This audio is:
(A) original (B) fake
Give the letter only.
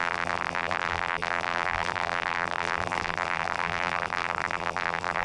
B